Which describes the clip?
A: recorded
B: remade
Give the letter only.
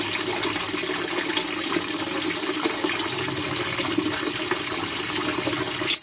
A